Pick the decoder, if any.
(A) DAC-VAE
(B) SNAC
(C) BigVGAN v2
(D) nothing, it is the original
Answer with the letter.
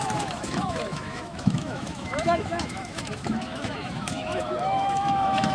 A